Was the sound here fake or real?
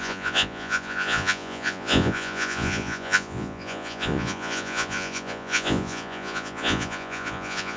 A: fake